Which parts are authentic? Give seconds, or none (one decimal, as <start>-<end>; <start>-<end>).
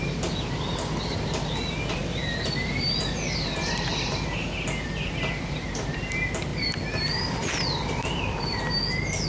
0.0-9.3